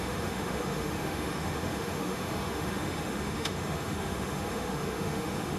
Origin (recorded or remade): remade